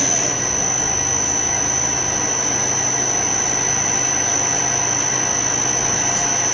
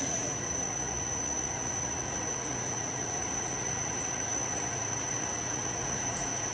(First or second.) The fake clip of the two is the second